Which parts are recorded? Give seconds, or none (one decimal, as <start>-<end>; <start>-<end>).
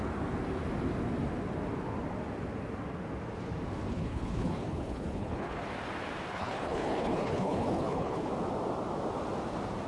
0.0-3.9; 5.6-6.3; 8.3-9.9